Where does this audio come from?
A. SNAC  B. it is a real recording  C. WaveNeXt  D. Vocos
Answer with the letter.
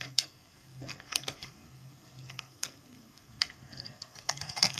A